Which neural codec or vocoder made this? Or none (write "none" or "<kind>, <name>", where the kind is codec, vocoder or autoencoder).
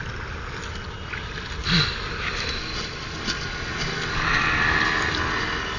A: none